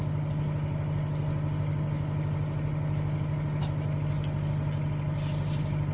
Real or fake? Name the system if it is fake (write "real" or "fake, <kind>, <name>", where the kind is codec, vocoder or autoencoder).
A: real